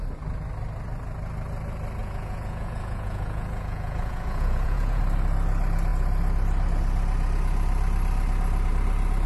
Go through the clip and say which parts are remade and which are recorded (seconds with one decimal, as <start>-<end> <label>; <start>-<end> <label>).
0.0-2.0 recorded; 2.0-5.0 remade; 5.0-9.3 recorded